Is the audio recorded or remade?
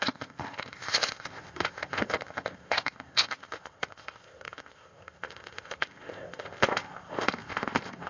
remade